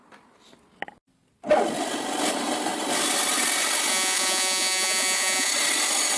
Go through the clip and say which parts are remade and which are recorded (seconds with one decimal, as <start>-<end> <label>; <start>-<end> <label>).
0.0-3.9 recorded; 3.9-5.5 remade; 5.5-6.2 recorded